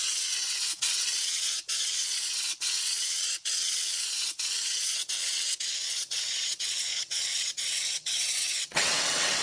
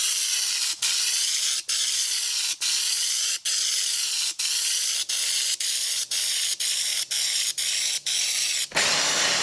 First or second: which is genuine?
second